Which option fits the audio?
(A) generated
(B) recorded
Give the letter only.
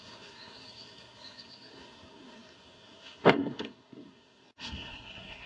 A